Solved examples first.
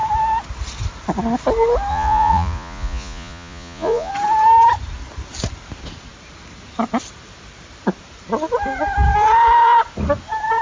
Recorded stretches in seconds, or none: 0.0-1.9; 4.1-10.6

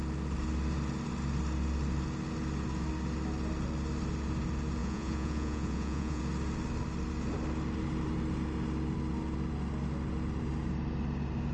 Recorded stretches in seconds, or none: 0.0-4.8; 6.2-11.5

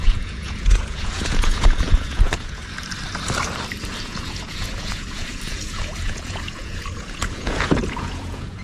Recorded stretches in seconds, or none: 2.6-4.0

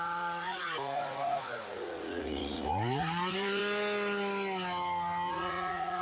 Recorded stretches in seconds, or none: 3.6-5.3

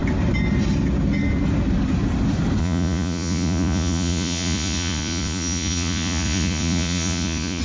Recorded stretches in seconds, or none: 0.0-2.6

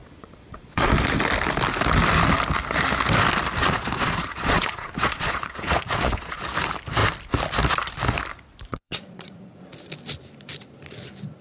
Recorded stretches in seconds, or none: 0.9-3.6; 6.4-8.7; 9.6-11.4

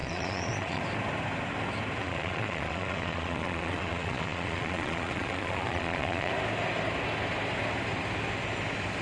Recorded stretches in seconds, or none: 0.8-2.0; 6.3-9.0

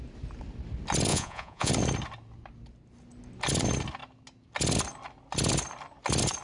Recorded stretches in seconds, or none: 0.0-1.1; 1.7-6.4